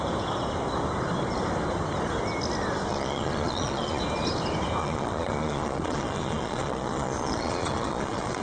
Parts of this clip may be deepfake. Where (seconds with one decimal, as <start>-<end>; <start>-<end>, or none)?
2.9-4.0; 4.8-8.4